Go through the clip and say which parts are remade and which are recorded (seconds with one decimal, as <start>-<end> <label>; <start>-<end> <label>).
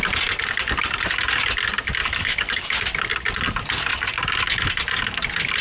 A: 0.0-2.0 recorded; 2.0-2.8 remade; 2.8-5.6 recorded